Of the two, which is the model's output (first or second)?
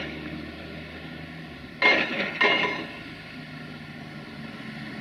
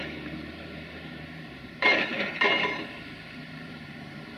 second